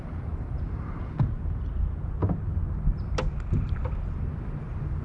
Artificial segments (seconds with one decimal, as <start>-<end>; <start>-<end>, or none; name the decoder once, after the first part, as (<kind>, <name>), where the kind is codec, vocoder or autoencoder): none